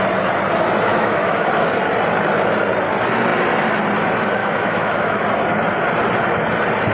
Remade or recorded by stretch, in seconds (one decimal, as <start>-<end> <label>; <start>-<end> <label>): 0.0-0.9 recorded; 0.9-1.5 remade; 1.5-4.4 recorded; 4.4-5.2 remade; 5.2-6.9 recorded